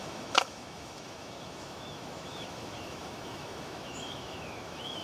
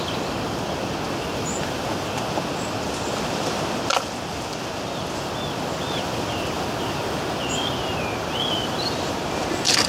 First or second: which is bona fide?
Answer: second